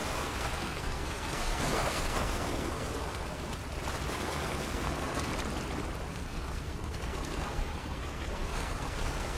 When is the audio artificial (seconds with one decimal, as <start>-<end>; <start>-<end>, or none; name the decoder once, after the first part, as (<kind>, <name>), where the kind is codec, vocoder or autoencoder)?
0.0-3.6 (codec, SNAC); 4.1-5.3; 6.1-9.4